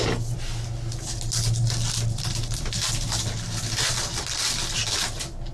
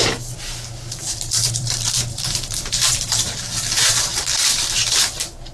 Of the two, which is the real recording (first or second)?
first